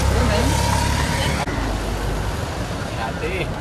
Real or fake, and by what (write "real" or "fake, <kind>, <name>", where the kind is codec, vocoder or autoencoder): real